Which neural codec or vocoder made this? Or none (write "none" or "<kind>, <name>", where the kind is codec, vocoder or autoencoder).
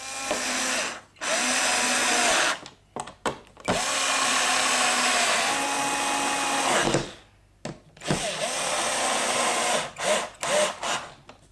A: none